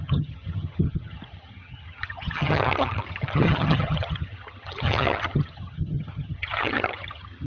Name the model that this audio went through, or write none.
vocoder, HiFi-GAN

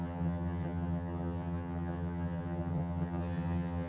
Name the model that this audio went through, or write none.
vocoder, HiFi-GAN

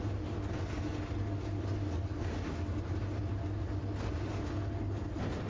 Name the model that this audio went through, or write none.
none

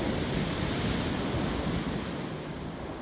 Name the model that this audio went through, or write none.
none